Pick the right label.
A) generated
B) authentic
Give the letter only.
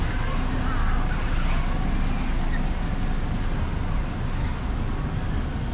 B